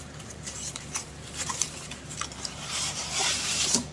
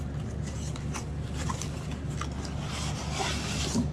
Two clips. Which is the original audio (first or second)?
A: second